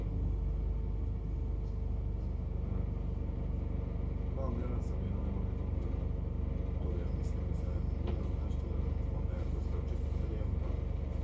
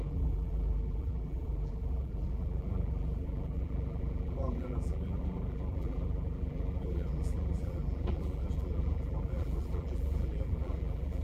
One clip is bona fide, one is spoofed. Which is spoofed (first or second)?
second